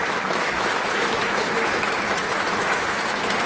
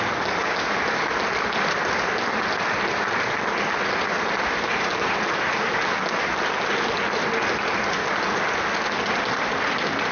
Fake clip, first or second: first